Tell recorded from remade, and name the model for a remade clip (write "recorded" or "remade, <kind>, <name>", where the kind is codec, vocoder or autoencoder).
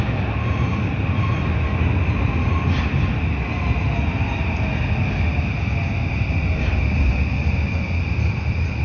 recorded